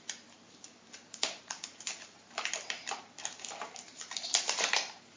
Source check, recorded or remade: remade